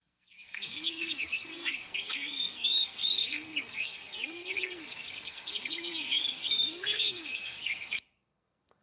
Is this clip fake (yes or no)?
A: yes